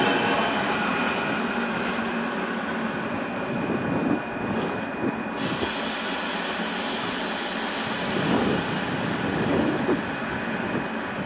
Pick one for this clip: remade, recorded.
recorded